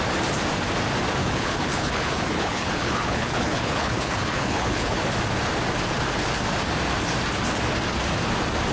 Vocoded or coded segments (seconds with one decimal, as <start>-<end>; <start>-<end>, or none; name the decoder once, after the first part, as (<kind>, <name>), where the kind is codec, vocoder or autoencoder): 1.2-5.0 (codec, HILCodec)

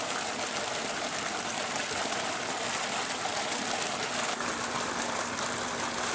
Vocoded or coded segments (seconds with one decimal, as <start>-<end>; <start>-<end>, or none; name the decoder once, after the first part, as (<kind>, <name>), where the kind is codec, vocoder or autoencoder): none

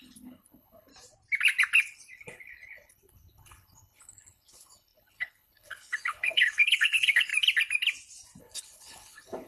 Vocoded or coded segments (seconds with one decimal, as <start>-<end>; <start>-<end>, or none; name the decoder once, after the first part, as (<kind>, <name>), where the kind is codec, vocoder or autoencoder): 0.0-0.9 (codec, HILCodec); 1.8-7.3; 8.4-9.5

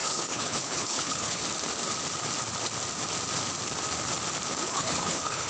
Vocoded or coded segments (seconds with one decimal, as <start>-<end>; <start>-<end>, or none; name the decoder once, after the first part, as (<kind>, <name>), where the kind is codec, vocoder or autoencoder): 0.0-1.4 (codec, HILCodec); 4.7-5.5

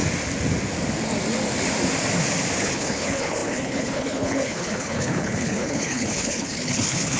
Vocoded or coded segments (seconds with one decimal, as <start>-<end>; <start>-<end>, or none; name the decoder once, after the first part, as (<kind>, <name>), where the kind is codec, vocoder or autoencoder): 2.6-7.2 (codec, HILCodec)

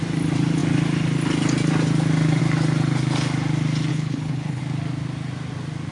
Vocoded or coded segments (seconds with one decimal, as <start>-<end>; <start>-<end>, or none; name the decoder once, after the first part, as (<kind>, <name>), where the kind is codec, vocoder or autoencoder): 3.9-4.6 (codec, HILCodec)